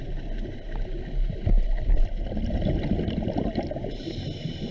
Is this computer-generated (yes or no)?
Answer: no